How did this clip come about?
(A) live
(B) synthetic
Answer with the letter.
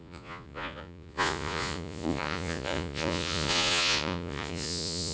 B